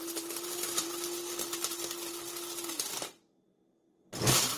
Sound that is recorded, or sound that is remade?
recorded